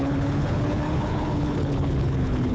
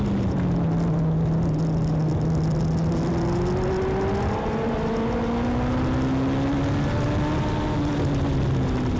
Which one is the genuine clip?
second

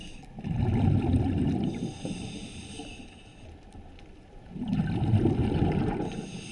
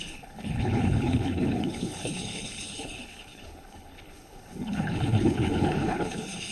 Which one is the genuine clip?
first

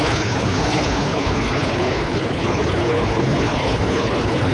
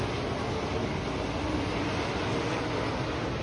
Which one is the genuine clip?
second